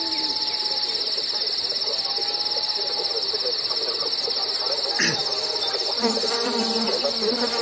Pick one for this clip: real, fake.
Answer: real